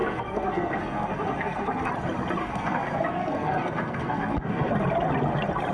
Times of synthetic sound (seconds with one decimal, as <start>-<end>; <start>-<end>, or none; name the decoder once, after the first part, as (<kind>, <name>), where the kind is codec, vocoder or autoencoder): 0.0-1.9 (codec, SNAC); 2.4-4.7